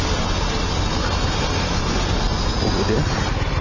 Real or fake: real